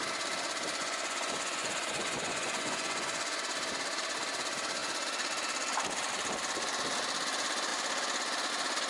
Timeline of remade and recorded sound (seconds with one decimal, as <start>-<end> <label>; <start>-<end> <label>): 0.0-0.8 recorded; 0.8-3.4 remade; 3.4-8.9 recorded